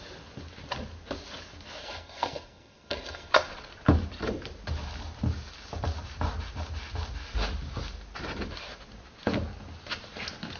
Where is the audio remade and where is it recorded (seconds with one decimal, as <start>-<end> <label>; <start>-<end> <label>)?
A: 0.0-1.8 recorded; 1.8-3.3 remade; 3.3-10.6 recorded